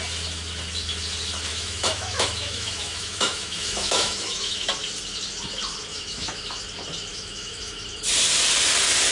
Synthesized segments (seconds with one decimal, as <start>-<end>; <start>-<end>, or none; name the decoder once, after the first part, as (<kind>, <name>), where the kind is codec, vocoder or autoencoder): 1.5-4.7 (autoencoder, DAC-VAE); 5.9-6.6; 7.1-7.8